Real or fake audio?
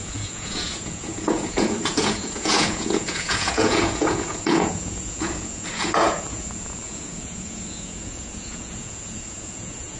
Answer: fake